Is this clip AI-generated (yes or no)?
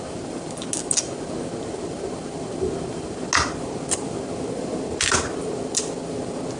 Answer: no